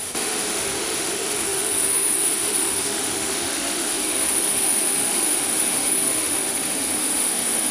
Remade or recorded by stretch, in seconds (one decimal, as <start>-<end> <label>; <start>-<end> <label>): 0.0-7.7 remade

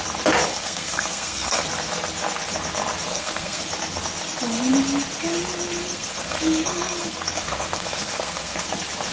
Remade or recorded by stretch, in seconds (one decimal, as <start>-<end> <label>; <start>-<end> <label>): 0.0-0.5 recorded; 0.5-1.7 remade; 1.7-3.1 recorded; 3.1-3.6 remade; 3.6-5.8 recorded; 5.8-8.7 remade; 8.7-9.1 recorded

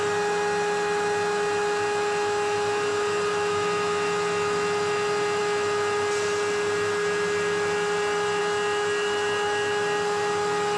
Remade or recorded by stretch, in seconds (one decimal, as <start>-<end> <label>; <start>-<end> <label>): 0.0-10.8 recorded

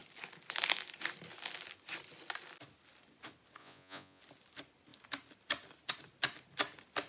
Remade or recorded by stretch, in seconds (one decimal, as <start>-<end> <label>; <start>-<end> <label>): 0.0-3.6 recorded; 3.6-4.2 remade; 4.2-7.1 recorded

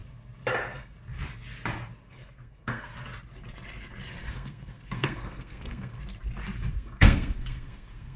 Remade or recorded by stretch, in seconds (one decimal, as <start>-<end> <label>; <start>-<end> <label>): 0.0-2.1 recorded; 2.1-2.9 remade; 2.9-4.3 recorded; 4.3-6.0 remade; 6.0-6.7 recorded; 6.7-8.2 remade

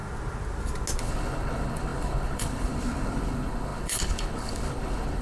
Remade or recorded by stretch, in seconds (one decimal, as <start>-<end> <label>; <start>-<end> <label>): 0.0-1.0 recorded; 1.0-5.2 remade

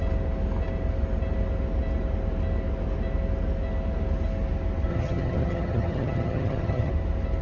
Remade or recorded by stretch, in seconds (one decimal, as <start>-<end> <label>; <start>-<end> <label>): 0.0-4.9 recorded; 4.9-6.9 remade; 6.9-7.4 recorded

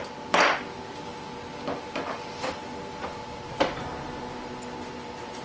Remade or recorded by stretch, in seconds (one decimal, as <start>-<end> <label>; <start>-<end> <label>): 0.0-5.4 recorded